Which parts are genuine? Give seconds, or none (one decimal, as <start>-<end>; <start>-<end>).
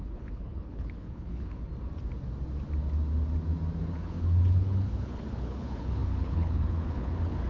1.7-3.8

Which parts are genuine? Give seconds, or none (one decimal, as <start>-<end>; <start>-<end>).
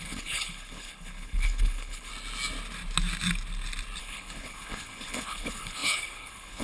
2.1-4.0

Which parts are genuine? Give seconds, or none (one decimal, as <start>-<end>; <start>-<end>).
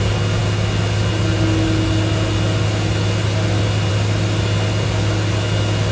0.0-5.9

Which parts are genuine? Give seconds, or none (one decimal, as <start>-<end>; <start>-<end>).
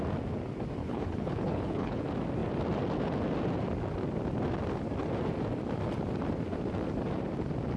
0.0-0.8; 2.0-7.8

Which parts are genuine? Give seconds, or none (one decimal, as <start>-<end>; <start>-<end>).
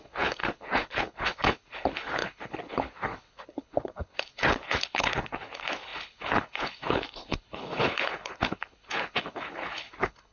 none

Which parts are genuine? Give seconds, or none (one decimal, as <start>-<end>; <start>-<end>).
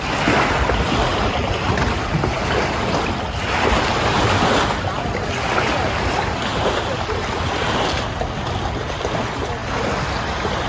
0.0-10.7